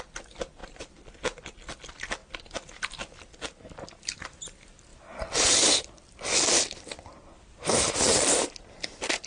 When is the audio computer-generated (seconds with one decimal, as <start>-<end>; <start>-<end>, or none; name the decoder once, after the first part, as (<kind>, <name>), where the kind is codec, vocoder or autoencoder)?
0.6-1.1 (vocoder, BigVGAN v2)